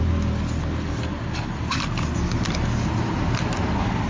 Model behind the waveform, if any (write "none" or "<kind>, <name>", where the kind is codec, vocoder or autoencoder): none